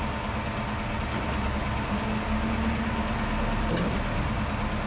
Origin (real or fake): real